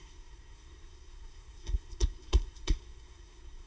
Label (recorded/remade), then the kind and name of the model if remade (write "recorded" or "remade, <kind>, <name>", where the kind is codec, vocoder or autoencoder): remade, codec, SNAC